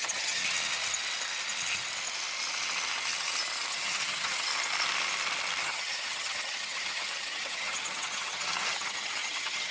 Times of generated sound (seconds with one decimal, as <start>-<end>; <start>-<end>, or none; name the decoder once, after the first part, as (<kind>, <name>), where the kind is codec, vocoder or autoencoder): 0.0-0.4 (vocoder, HiFi-GAN); 3.7-4.5; 5.6-9.7